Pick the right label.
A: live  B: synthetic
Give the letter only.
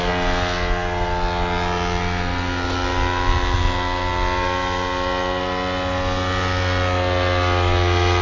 A